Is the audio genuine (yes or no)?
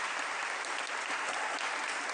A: yes